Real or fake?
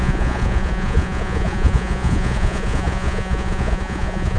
fake